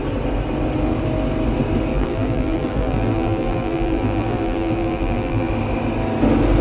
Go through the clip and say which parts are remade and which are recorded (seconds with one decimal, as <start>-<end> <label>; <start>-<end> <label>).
0.0-1.9 recorded; 1.9-5.5 remade; 5.5-6.6 recorded